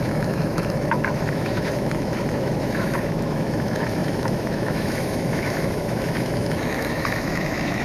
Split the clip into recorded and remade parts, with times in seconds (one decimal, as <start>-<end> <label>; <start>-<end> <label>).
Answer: 0.0-7.8 remade